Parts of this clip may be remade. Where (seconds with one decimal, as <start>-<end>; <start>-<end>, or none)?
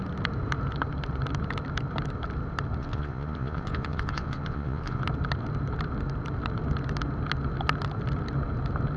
2.8-5.0